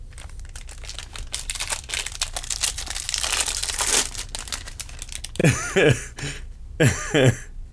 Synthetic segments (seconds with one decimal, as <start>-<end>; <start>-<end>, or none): none

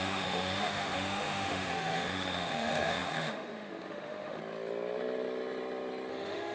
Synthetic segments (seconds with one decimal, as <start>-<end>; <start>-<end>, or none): 0.0-4.4; 6.1-6.5